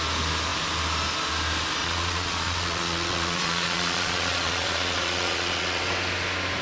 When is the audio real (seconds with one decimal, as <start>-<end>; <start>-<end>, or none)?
0.0-1.8; 5.8-6.6